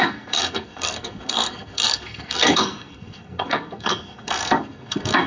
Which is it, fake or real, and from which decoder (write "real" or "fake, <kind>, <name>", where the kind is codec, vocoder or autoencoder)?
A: fake, codec, SNAC